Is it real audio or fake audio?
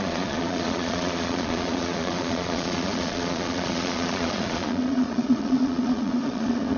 fake